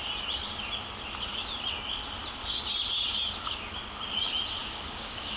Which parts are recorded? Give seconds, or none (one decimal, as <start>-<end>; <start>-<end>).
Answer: 0.0-4.6